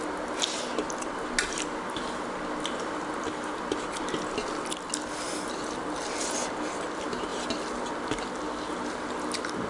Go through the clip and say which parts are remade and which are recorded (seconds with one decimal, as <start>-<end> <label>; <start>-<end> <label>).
0.0-9.7 recorded